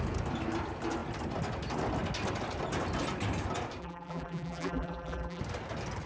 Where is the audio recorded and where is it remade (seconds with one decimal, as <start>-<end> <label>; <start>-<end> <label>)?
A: 0.0-3.8 recorded; 3.8-5.4 remade; 5.4-6.1 recorded